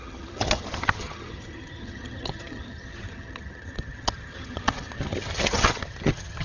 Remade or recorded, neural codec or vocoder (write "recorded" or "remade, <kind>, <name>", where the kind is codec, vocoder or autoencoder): remade, vocoder, HiFi-GAN